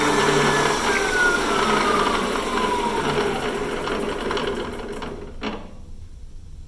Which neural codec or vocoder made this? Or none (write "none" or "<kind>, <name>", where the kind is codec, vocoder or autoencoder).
none